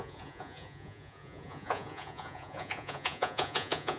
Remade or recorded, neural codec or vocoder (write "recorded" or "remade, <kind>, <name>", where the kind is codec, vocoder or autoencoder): remade, vocoder, Vocos